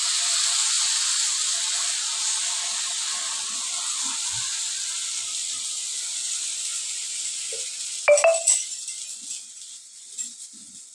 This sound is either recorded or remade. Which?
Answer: recorded